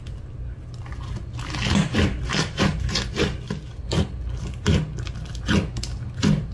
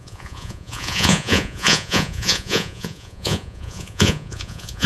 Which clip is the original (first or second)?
first